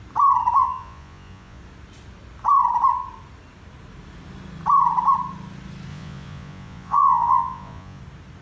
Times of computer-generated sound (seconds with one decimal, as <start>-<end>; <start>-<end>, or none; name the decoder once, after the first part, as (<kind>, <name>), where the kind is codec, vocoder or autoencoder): 0.6-1.6 (vocoder, Vocos); 5.9-8.0